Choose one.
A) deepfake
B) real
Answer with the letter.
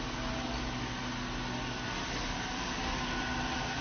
B